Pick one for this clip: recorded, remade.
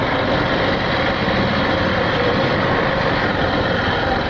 recorded